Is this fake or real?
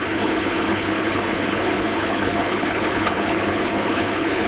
fake